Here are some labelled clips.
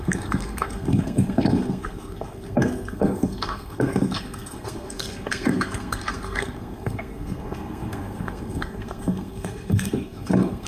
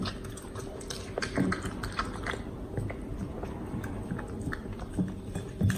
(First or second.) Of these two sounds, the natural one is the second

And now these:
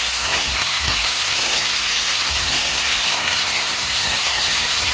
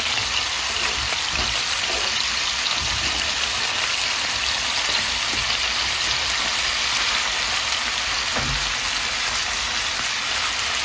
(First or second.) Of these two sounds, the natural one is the second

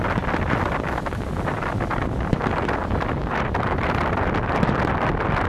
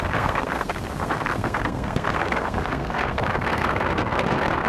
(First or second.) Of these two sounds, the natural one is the first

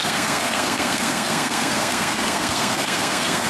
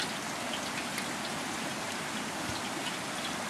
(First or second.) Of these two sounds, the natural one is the second